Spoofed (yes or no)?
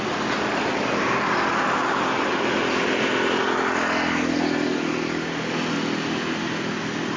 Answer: no